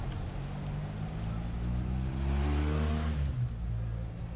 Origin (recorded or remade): recorded